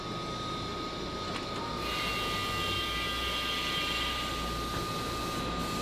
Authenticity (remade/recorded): recorded